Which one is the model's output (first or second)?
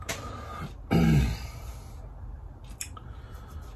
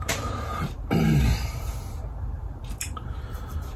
second